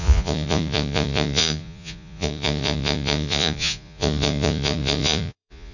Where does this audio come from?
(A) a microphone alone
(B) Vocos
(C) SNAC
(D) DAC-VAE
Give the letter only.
B